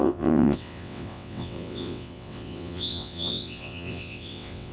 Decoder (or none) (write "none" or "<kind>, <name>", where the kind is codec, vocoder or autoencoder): vocoder, WaveNeXt